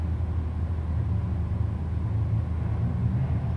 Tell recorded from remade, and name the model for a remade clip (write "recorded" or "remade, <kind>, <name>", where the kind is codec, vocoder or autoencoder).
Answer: recorded